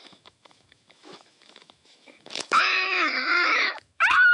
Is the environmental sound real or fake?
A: fake